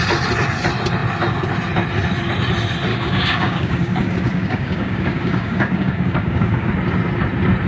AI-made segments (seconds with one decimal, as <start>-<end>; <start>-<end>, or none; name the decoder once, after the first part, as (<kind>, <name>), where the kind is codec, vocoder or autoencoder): 2.9-6.7 (codec, DAC)